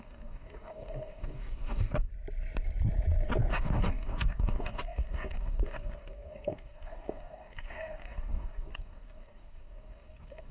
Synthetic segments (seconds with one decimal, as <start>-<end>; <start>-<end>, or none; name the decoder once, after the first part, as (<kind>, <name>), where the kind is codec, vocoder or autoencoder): 0.0-2.1 (codec, DAC); 3.5-10.5